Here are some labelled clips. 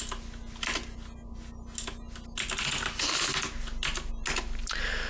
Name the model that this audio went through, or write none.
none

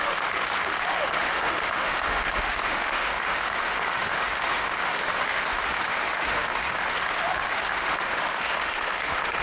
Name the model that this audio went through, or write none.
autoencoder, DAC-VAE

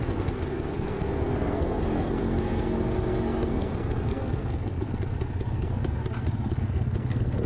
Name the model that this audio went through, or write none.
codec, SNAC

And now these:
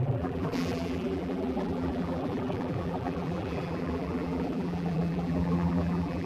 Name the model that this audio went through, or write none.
vocoder, BigVGAN v2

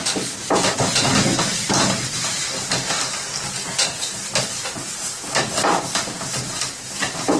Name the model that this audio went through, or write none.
none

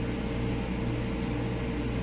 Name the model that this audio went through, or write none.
none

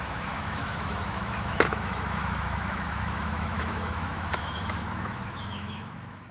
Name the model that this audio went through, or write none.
autoencoder, DAC-VAE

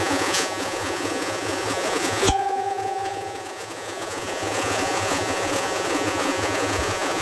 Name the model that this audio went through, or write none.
vocoder, Vocos